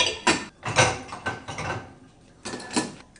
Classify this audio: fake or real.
real